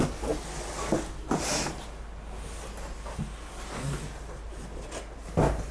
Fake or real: real